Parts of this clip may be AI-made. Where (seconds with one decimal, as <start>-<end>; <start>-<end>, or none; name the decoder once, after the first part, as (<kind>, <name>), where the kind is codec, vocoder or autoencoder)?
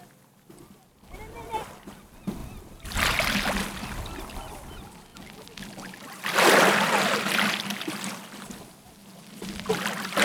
none